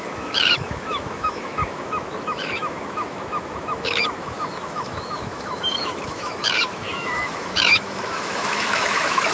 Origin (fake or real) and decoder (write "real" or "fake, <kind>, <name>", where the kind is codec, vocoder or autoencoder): fake, autoencoder, DAC-VAE